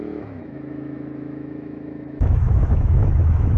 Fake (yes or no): yes